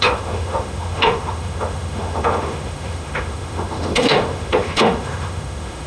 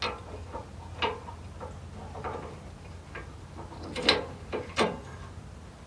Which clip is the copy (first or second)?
first